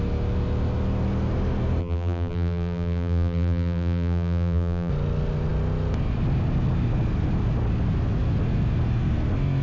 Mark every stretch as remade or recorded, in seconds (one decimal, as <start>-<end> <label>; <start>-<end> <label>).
0.0-1.8 recorded; 1.8-4.9 remade; 4.9-9.6 recorded